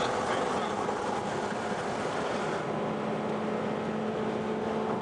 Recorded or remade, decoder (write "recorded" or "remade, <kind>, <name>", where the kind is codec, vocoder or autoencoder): recorded